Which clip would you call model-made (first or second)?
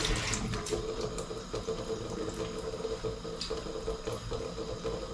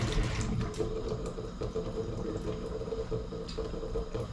second